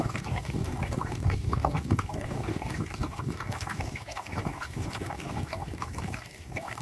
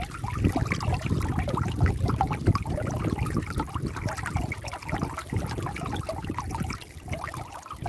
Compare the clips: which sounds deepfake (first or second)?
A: first